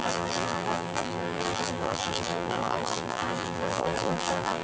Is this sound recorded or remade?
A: remade